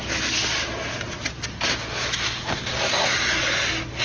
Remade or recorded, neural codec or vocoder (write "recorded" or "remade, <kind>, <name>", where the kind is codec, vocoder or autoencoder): recorded